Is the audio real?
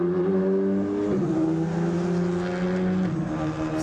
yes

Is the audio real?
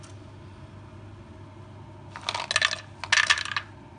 yes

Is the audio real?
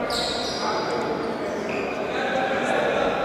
yes